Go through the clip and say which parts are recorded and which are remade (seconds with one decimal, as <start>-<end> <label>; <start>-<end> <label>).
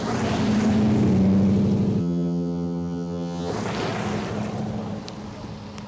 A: 0.0-2.0 recorded; 2.0-3.5 remade; 3.5-5.9 recorded